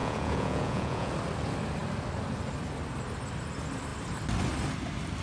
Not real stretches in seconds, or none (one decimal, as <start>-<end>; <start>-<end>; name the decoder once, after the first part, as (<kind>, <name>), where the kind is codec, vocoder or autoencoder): 0.0-1.1 (vocoder, Vocos)